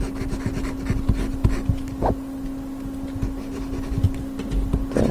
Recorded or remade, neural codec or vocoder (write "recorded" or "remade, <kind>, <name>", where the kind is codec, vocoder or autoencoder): recorded